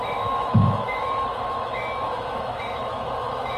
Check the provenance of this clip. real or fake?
fake